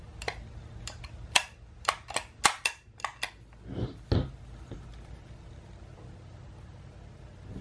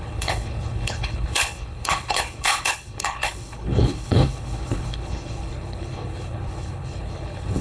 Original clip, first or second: first